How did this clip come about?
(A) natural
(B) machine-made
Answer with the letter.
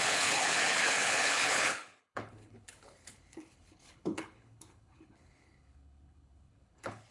B